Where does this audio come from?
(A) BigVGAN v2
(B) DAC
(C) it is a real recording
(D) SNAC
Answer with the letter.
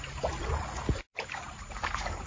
A